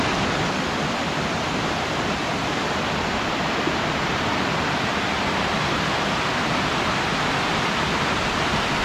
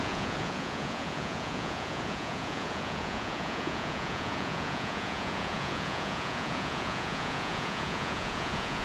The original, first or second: first